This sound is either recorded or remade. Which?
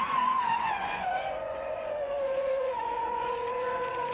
remade